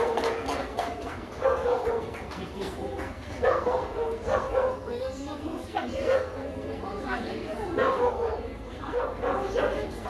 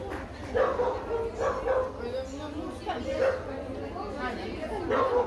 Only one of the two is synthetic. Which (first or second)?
first